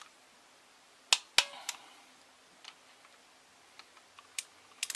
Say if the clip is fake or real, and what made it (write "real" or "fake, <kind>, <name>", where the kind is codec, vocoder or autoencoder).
real